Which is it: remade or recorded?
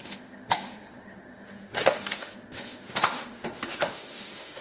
remade